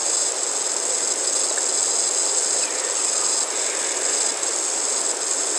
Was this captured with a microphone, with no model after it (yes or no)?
yes